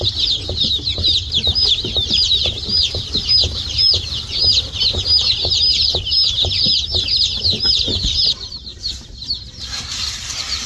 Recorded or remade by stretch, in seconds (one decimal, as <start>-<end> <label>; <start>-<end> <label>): 0.0-3.9 remade; 3.9-8.0 recorded; 8.0-10.7 remade